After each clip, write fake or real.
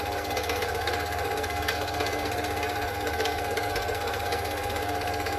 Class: fake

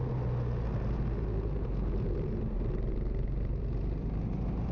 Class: real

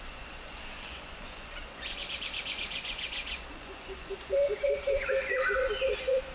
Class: fake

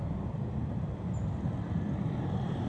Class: real